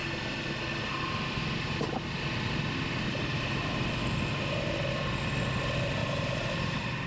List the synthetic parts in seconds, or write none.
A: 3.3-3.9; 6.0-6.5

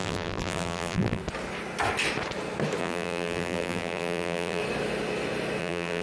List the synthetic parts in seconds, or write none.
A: 0.0-1.2; 2.8-4.6; 5.6-6.0

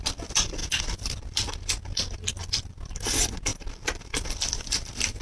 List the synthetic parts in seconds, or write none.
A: 3.5-4.0

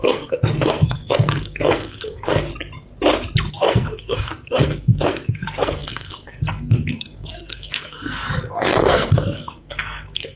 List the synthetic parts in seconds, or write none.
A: 0.0-2.5; 3.5-10.4

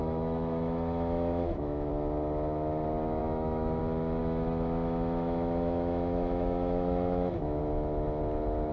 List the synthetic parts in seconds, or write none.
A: 0.0-1.9; 3.2-3.8; 4.2-7.6

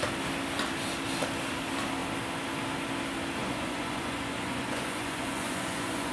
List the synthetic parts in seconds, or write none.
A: 3.4-6.1

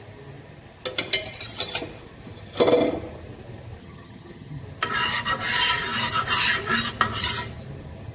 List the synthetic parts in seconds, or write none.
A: 3.8-4.6